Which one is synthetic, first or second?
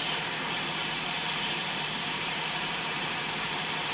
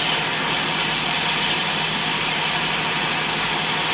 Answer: first